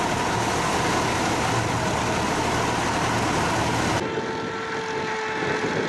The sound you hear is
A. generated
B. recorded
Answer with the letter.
B